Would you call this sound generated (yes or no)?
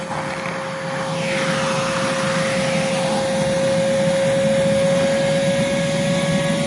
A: no